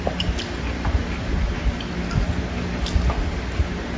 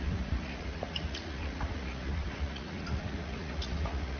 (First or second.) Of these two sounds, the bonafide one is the first